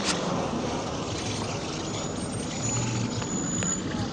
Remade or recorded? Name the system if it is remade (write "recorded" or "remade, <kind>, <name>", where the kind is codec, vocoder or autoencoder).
recorded